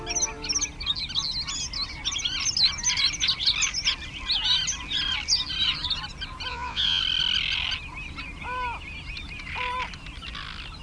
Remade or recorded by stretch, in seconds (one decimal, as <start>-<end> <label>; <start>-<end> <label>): 0.0-6.5 recorded; 6.5-7.0 remade; 7.0-10.8 recorded